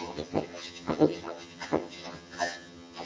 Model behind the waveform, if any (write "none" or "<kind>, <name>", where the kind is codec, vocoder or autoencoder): vocoder, HiFi-GAN